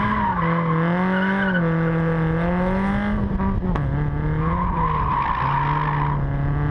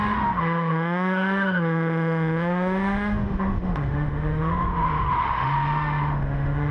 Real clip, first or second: first